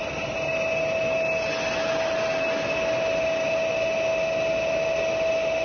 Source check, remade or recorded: recorded